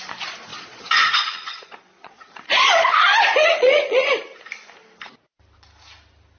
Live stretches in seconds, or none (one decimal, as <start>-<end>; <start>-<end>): 0.0-0.5; 2.3-3.5; 4.1-6.4